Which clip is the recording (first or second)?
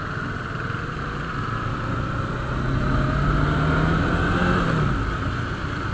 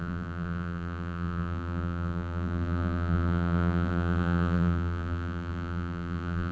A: first